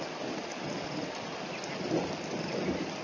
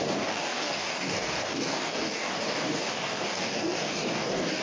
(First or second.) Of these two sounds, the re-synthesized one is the second